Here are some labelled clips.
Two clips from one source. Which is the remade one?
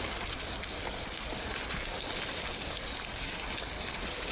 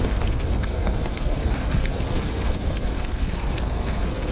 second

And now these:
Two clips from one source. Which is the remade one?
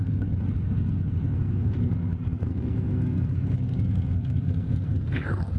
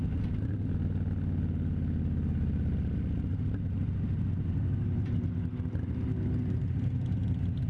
first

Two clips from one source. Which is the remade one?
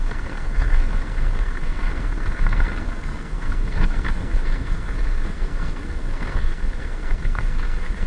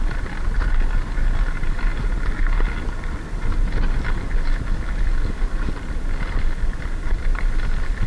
first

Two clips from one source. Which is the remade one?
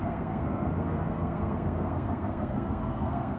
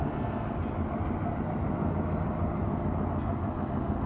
first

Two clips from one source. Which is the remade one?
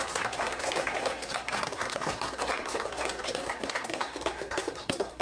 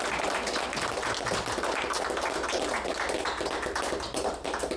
first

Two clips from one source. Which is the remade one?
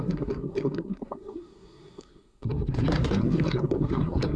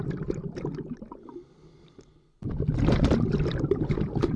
first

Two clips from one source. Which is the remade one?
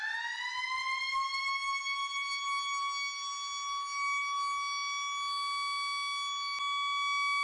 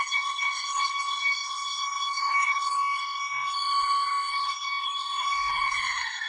second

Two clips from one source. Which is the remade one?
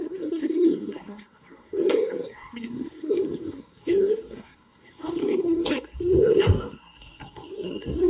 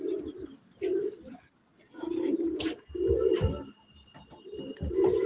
first